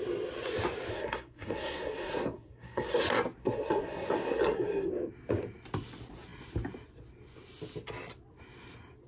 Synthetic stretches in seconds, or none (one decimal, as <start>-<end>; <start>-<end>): 0.9-3.0; 3.4-4.9